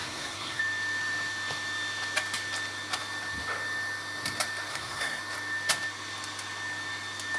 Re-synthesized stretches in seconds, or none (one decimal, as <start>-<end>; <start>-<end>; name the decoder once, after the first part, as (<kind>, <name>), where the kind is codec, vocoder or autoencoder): 0.0-0.6 (codec, SNAC); 4.7-5.2